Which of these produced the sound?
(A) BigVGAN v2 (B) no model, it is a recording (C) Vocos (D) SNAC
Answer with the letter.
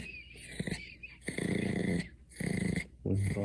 B